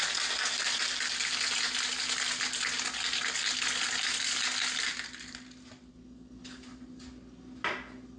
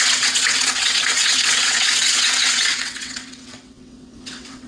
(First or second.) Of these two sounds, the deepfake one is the second